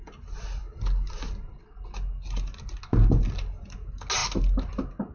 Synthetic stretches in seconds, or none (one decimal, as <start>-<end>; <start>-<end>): none